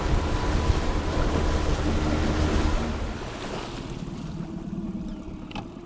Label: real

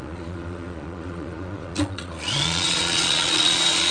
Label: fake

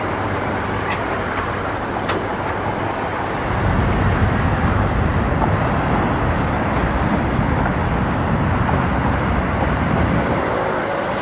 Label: real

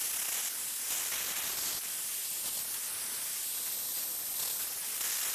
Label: real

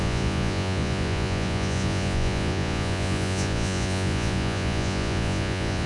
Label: fake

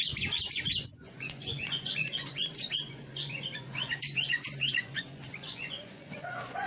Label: fake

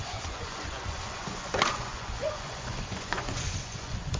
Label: fake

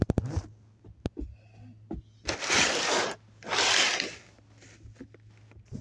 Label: real